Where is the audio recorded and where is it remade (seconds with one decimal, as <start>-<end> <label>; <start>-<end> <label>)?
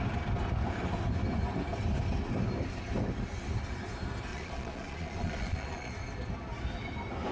0.0-4.3 recorded; 4.3-5.9 remade; 5.9-7.3 recorded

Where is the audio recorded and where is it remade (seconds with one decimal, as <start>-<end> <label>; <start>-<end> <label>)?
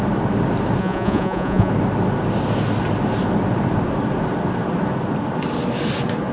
0.0-0.8 recorded; 0.8-1.7 remade; 1.7-6.3 recorded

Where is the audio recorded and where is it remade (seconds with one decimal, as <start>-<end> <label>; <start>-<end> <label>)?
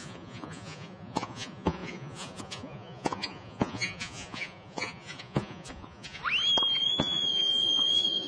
0.0-6.2 remade; 6.2-6.8 recorded; 6.8-8.3 remade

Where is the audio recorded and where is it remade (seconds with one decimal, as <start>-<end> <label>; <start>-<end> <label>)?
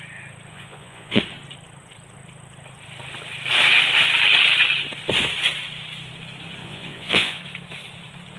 0.0-0.5 recorded; 0.5-1.2 remade; 1.2-6.6 recorded; 6.6-7.4 remade; 7.4-8.4 recorded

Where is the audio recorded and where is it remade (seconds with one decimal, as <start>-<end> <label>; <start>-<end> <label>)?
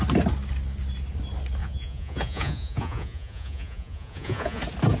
0.0-1.6 recorded; 1.6-4.6 remade; 4.6-5.0 recorded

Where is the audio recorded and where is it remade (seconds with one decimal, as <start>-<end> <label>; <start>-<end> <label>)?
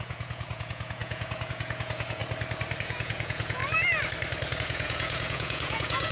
0.0-2.2 remade; 2.2-2.8 recorded; 2.8-3.6 remade; 3.6-4.6 recorded; 4.6-6.1 remade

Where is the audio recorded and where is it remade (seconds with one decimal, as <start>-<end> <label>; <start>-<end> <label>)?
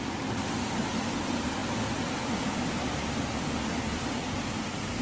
0.0-5.0 recorded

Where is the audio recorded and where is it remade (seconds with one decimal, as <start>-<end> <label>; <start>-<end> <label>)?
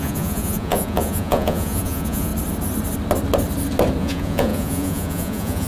0.0-2.3 remade; 2.3-4.0 recorded; 4.0-5.7 remade